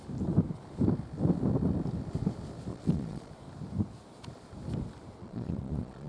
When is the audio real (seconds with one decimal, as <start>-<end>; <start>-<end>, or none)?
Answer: 0.0-2.7; 3.3-5.2